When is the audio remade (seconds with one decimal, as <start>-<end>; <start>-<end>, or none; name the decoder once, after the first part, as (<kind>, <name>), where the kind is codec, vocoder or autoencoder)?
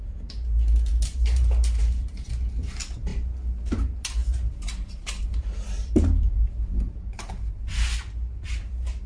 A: 0.9-2.3 (vocoder, BigVGAN v2); 4.2-7.3